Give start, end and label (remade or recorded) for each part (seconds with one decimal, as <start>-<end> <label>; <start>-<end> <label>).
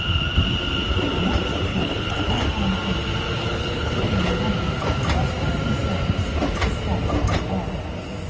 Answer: 0.0-1.7 recorded; 1.7-2.4 remade; 2.4-3.4 recorded; 3.4-4.4 remade; 4.4-8.3 recorded